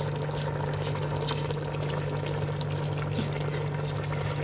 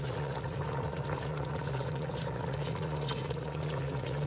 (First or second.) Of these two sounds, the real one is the first